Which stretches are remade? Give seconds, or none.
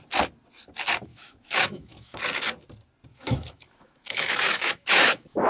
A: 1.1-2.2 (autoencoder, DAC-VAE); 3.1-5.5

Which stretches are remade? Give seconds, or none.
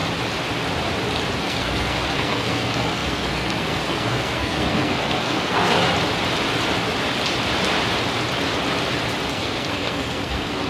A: 1.4-5.8 (codec, SNAC); 9.3-10.7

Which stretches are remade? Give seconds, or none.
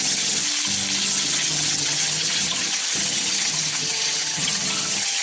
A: 0.0-0.4 (vocoder, HiFi-GAN); 1.0-5.2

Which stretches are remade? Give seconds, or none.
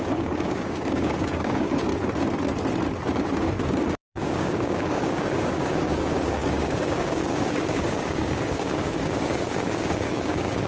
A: 0.0-1.9 (codec, DAC); 3.2-10.7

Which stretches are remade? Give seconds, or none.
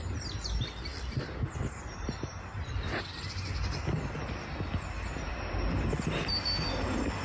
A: 0.9-4.0 (vocoder, BigVGAN v2)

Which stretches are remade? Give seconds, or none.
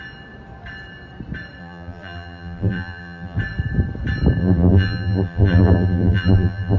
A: 1.6-3.4 (vocoder, BigVGAN v2); 4.4-6.8